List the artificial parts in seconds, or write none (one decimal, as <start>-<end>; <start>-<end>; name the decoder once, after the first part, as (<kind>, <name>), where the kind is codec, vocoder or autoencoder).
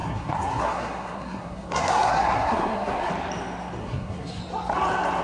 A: 0.0-3.1 (codec, SNAC); 3.8-4.4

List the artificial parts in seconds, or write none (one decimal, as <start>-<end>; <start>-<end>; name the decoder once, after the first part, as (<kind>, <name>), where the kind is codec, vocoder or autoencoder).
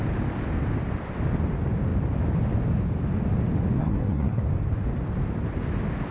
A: 3.8-4.4 (codec, SNAC)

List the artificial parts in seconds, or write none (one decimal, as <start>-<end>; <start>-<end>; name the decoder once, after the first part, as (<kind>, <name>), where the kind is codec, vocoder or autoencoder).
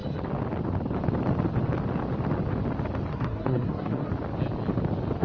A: 3.1-4.1 (codec, SNAC)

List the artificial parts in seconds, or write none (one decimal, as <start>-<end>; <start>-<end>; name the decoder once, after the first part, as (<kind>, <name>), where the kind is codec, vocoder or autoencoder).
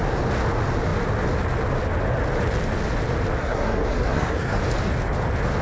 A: 3.4-4.6 (codec, SNAC)